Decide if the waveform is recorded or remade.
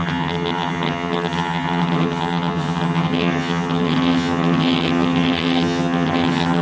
remade